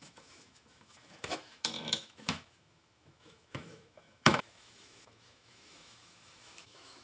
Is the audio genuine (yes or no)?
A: no